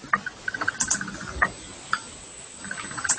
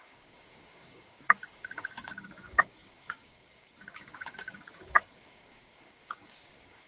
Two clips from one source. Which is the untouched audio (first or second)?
first